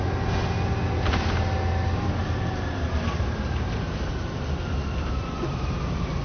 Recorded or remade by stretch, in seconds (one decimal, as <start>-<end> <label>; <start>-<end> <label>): 0.0-2.2 recorded; 2.2-6.2 remade